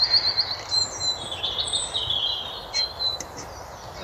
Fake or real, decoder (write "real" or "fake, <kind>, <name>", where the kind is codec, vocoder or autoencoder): fake, vocoder, BigVGAN v2